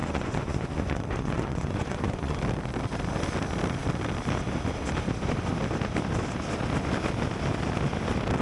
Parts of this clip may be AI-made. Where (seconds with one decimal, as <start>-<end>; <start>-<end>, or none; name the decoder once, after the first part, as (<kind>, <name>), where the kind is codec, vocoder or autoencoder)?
0.0-2.4 (vocoder, Vocos)